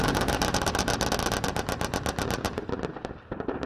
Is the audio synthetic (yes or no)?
no